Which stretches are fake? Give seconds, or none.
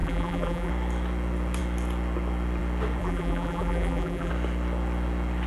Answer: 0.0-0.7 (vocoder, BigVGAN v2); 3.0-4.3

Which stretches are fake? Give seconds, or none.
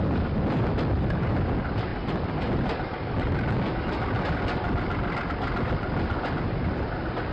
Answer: none